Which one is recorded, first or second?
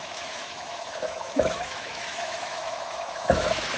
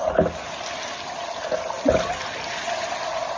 second